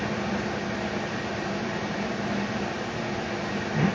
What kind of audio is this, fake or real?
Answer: real